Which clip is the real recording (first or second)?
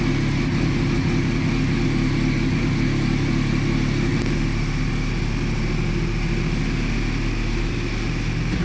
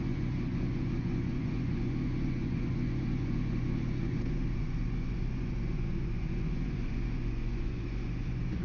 first